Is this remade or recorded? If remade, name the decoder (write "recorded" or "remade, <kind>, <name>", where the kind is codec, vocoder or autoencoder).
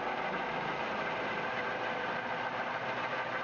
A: recorded